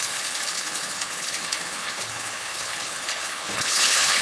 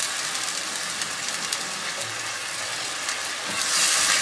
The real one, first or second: second